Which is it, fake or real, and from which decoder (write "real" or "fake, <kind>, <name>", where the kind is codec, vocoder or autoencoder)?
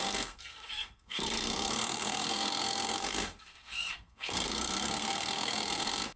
fake, codec, SNAC